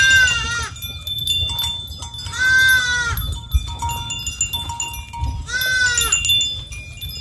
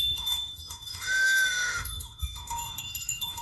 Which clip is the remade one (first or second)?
second